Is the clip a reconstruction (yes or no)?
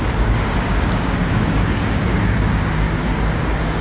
yes